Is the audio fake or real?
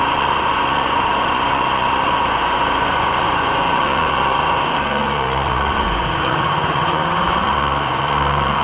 fake